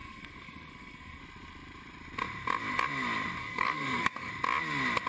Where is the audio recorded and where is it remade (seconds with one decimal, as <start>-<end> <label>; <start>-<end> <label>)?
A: 0.0-1.2 remade; 1.2-3.4 recorded; 3.4-4.3 remade; 4.3-5.1 recorded